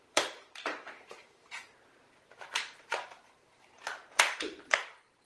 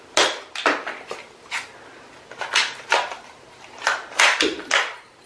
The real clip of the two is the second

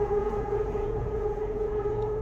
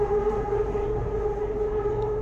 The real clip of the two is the second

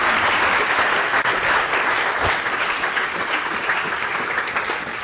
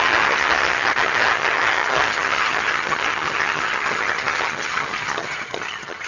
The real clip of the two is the first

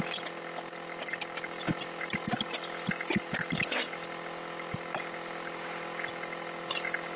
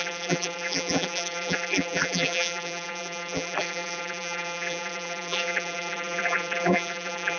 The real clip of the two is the first